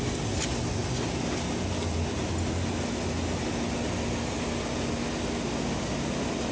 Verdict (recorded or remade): recorded